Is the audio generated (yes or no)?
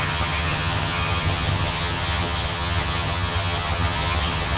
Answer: yes